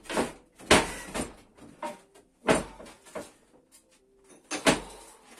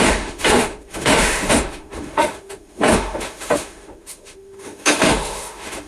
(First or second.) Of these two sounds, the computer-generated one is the second